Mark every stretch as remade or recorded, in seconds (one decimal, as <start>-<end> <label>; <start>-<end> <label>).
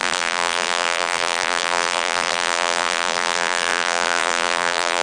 0.0-5.0 remade